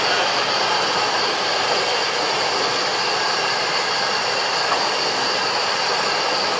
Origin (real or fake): real